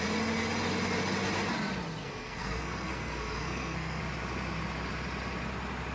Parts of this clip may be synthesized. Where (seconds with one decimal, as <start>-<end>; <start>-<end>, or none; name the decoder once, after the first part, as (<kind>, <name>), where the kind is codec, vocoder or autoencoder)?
2.0-4.0 (codec, SNAC)